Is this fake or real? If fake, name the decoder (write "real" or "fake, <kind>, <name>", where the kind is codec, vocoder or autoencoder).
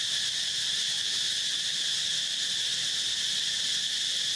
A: real